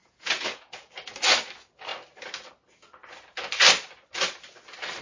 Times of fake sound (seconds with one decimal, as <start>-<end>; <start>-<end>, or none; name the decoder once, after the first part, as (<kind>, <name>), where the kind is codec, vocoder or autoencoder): 0.0-0.9 (vocoder, Vocos)